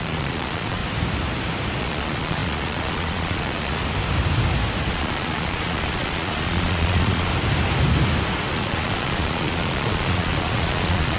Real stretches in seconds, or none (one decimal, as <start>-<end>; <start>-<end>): 0.8-1.8; 3.8-4.9; 7.3-8.5